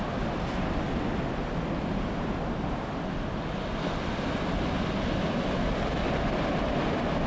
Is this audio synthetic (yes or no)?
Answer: no